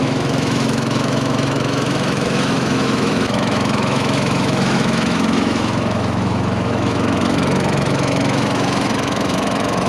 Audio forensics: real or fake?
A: fake